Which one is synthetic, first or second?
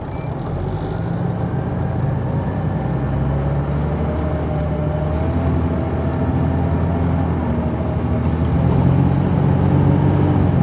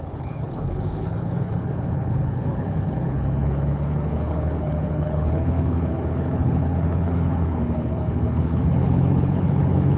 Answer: second